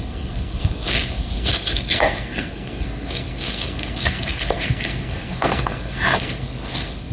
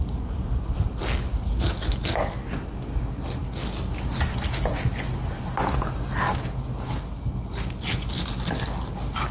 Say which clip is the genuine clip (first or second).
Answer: second